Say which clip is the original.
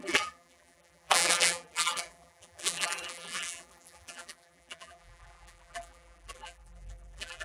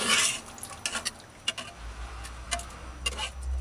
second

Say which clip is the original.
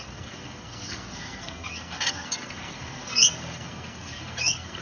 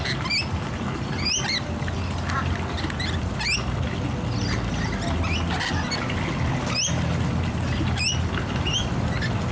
second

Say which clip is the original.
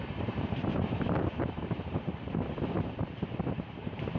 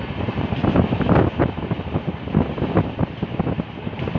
second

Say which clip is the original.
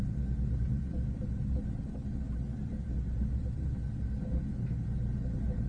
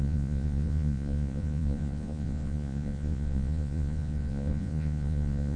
first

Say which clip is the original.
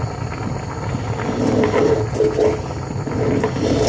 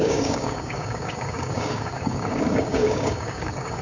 first